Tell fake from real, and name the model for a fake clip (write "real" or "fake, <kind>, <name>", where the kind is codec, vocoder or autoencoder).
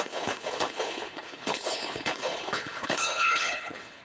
fake, codec, HILCodec